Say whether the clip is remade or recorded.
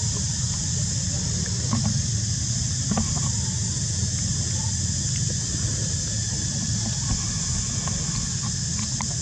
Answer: recorded